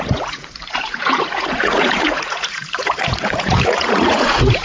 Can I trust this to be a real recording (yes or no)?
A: no